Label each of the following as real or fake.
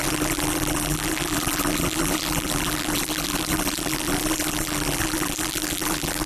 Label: fake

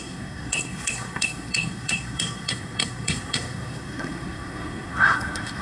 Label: fake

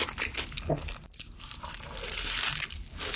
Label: real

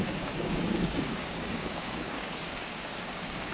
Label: fake